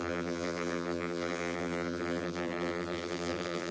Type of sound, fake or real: fake